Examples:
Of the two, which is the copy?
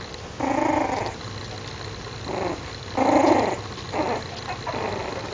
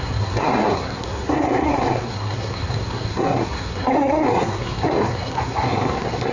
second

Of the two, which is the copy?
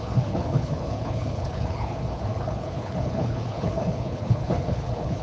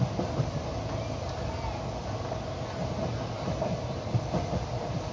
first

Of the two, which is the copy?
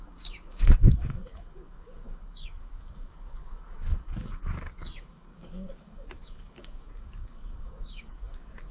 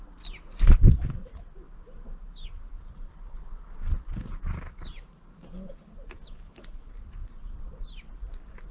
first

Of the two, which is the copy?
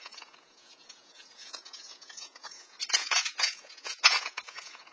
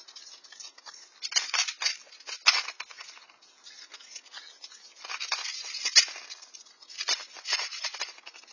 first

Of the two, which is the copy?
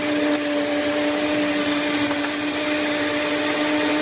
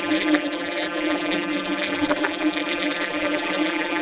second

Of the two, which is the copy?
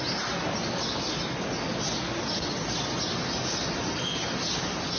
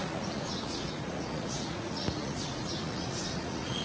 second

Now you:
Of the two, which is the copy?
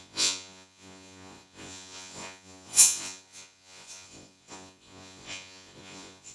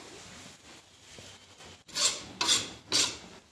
first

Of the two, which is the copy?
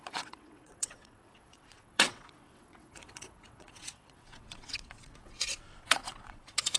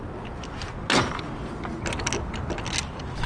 first